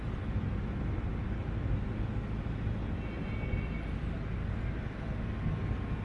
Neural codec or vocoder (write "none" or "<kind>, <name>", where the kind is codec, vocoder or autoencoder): none